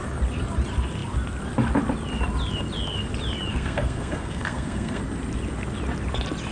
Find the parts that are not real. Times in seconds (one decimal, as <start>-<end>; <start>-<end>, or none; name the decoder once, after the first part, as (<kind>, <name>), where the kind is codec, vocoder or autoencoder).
3.5-5.0 (codec, SNAC)